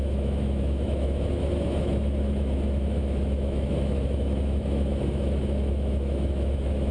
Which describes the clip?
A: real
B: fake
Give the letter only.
B